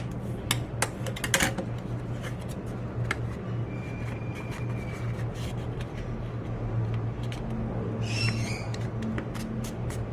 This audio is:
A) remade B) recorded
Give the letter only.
B